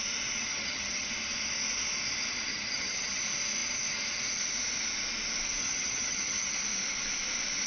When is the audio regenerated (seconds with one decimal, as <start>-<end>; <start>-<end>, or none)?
0.5-1.1; 2.5-3.2; 5.6-6.5